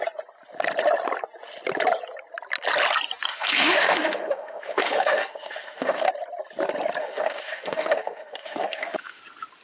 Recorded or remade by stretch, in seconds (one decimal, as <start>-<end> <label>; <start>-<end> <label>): 0.0-3.3 recorded; 3.3-6.1 remade; 6.1-7.0 recorded; 7.0-9.2 remade; 9.2-9.6 recorded